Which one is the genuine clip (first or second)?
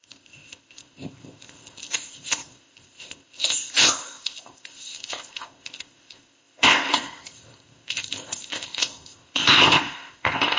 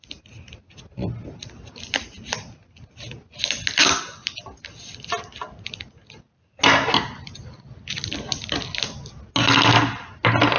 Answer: second